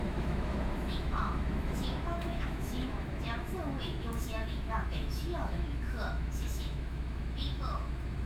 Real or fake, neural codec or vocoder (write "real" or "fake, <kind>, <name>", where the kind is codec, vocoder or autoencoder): fake, autoencoder, DAC-VAE